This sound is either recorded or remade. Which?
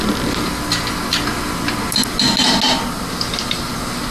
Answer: recorded